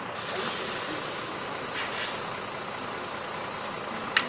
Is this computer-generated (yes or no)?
no